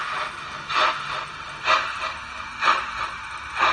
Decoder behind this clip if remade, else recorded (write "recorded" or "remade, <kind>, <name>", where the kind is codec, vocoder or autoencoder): recorded